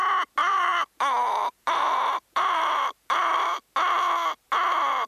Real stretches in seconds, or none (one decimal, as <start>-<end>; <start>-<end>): 0.0-0.4; 3.5-5.1